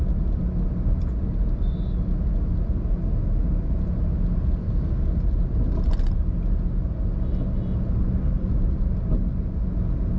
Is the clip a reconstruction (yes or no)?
no